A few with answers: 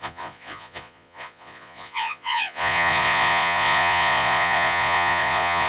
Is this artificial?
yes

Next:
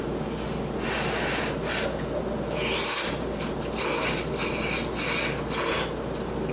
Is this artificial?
no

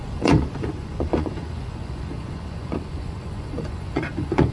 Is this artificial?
yes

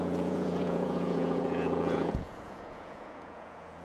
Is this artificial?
yes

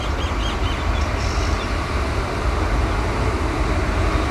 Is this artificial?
no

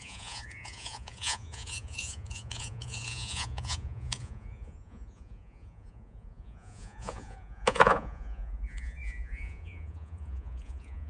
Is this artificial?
yes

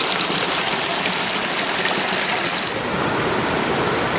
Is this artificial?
no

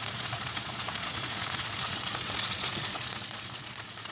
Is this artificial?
yes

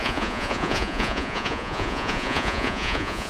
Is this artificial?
yes